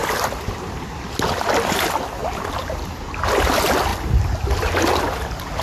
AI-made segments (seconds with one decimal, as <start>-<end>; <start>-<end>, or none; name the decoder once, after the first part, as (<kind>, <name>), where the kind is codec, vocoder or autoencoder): 0.0-1.5 (vocoder, BigVGAN v2); 2.2-2.9; 3.9-4.7

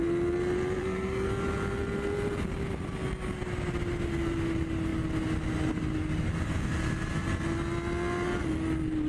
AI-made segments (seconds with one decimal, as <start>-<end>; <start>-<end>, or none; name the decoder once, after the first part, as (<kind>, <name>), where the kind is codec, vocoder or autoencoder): 0.8-1.3 (codec, SNAC)

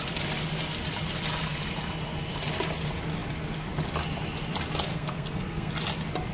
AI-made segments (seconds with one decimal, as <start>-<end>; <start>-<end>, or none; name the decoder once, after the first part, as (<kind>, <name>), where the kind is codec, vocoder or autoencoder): 4.9-5.7 (codec, SNAC)

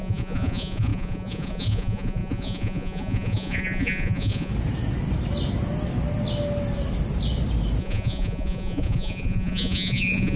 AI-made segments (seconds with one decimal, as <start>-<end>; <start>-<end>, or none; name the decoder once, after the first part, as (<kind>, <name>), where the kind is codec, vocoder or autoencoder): 0.0-4.5 (vocoder, Vocos); 7.8-10.4

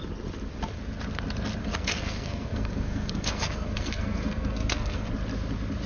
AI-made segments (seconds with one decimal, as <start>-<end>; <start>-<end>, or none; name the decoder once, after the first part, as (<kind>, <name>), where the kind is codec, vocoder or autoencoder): 1.6-5.1 (codec, SNAC)